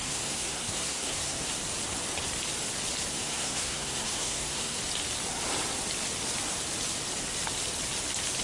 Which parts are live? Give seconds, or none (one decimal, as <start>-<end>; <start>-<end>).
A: 1.5-3.1; 4.8-8.4